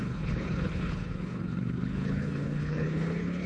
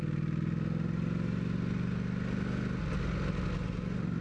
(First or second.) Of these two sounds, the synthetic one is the first